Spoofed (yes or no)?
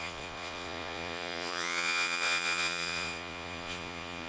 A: yes